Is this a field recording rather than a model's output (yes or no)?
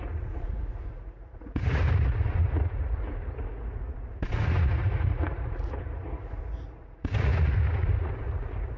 no